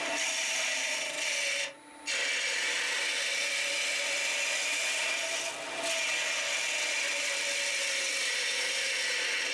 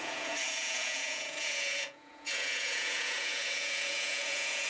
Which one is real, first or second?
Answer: first